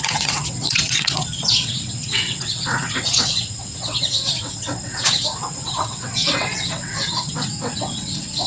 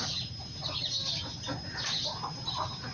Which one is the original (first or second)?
second